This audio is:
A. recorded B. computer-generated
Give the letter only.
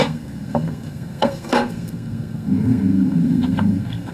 B